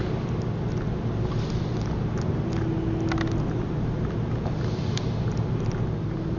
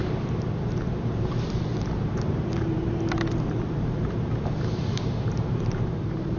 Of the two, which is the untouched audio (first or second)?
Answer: first